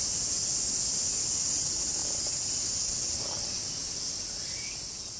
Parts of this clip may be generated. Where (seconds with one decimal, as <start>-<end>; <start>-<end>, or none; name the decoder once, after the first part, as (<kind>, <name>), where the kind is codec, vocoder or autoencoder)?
none